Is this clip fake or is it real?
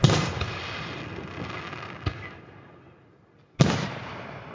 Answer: real